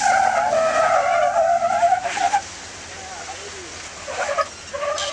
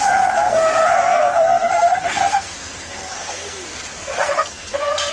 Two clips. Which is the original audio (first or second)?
first